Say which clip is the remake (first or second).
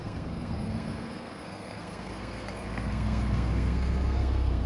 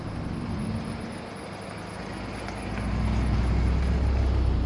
first